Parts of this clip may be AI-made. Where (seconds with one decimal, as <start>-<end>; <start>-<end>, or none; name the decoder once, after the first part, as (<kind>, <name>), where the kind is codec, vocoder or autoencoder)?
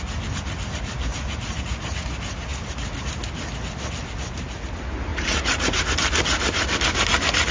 1.1-1.6 (vocoder, BigVGAN v2); 5.1-5.8